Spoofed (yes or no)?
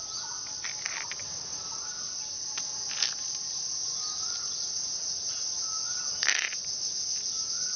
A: no